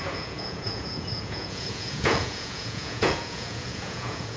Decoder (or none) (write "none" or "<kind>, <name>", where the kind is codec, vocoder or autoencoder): vocoder, Vocos